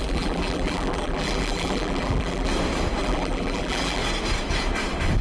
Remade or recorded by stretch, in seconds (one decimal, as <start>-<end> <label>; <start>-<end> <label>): 0.0-2.5 remade; 2.5-3.0 recorded; 3.0-4.0 remade; 4.0-5.2 recorded